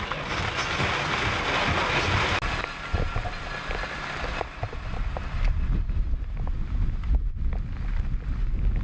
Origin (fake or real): real